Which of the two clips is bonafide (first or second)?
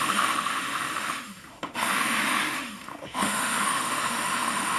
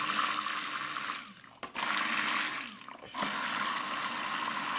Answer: second